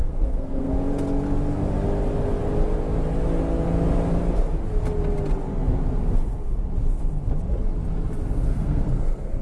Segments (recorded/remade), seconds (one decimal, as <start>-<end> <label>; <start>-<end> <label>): 0.0-0.7 remade; 0.7-8.5 recorded; 8.5-9.4 remade